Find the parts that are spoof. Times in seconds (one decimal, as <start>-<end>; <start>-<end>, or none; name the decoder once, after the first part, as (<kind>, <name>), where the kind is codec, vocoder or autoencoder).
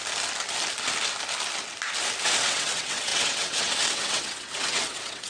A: 2.2-5.3 (vocoder, WaveNeXt)